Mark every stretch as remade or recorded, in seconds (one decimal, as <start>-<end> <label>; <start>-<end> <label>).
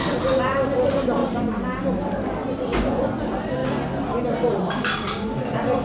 0.0-2.7 recorded; 2.7-3.2 remade; 3.2-5.8 recorded